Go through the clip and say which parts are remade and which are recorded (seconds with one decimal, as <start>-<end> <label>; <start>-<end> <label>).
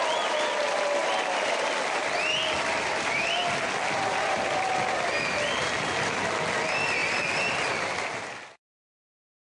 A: 0.0-9.5 recorded